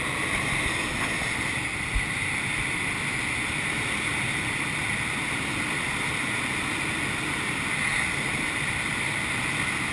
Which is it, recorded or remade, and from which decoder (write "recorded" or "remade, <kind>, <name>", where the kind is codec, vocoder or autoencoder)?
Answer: recorded